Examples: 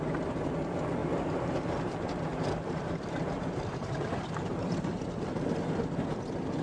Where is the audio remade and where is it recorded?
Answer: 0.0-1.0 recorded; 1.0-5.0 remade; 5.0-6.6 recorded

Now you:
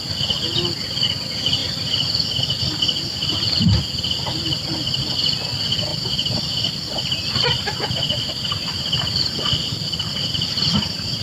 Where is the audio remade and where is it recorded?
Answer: 0.0-1.6 recorded; 1.6-2.8 remade; 2.8-5.9 recorded; 5.9-11.2 remade

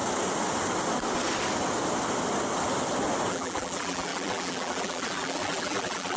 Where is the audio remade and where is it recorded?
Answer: 0.0-3.3 recorded; 3.3-6.2 remade

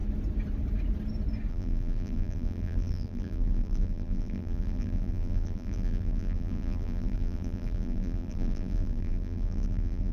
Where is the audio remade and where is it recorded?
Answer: 0.0-1.5 recorded; 1.5-10.1 remade